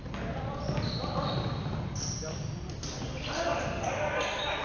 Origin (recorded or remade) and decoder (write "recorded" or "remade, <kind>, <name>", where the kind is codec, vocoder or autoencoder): recorded